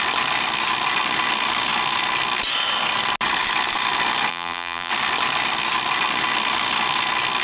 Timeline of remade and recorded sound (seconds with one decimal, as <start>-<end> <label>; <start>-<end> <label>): 0.0-4.3 recorded; 4.3-4.9 remade; 4.9-7.4 recorded